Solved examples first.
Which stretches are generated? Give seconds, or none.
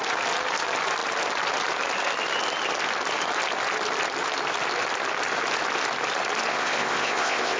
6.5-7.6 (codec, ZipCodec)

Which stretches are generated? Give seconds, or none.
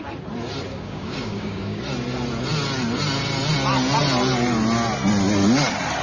0.7-1.8 (codec, DAC)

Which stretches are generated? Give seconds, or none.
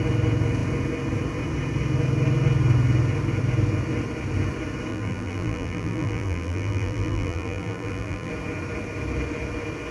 4.9-8.3 (vocoder, BigVGAN v2)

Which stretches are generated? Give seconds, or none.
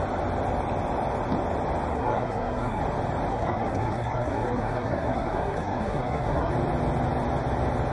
1.9-2.8 (codec, SNAC); 3.3-6.5